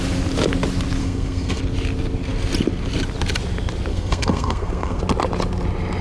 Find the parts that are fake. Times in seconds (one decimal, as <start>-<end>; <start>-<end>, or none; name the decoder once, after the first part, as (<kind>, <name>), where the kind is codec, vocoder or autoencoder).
1.0-1.6 (codec, SNAC); 3.9-5.0